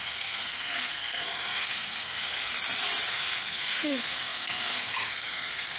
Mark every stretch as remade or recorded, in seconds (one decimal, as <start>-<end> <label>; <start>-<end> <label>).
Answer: 0.0-2.5 remade; 2.5-3.1 recorded; 3.1-5.8 remade